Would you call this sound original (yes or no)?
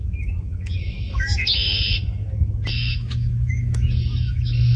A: no